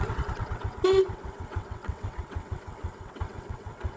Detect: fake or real fake